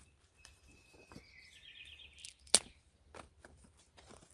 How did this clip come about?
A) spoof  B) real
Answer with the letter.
A